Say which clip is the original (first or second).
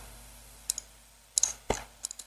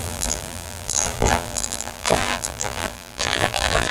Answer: first